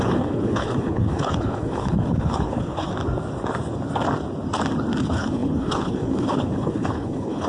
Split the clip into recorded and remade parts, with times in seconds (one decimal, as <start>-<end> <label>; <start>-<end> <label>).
0.0-2.9 remade; 2.9-5.0 recorded; 5.0-7.5 remade